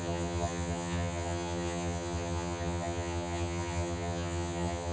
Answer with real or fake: fake